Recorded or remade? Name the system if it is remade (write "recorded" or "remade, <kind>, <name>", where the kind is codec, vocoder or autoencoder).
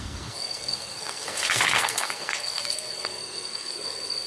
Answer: remade, codec, SNAC